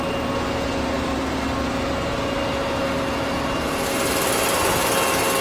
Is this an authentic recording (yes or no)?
yes